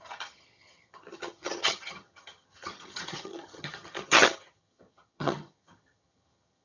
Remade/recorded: remade